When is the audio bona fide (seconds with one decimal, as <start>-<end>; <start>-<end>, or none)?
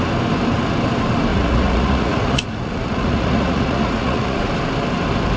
0.0-1.3; 4.5-5.4